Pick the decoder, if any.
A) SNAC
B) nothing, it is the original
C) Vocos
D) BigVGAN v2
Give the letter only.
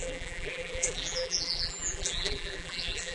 D